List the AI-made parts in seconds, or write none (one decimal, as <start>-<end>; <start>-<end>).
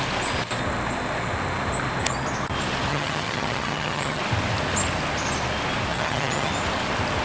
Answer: 2.9-4.2; 5.9-6.5